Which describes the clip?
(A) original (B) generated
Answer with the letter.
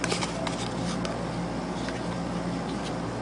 A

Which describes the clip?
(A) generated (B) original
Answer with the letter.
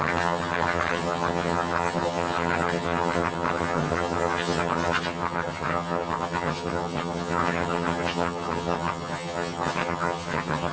A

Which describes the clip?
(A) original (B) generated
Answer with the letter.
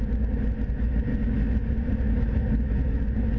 A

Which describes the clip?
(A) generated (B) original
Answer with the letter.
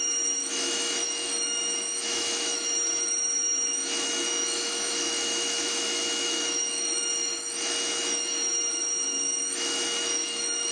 A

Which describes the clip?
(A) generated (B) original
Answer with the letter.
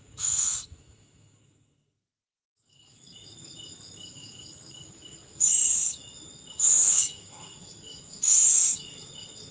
A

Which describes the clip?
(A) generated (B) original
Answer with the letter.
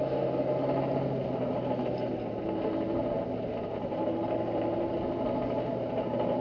B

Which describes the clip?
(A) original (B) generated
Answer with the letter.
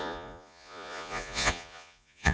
B